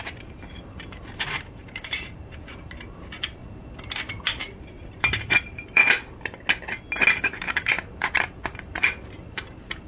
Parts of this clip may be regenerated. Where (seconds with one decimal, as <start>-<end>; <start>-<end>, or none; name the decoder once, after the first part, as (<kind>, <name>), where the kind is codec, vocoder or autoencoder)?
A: 0.0-3.4 (vocoder, BigVGAN v2); 4.1-5.8; 7.2-9.9